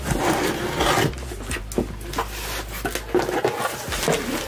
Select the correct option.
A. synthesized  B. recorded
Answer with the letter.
B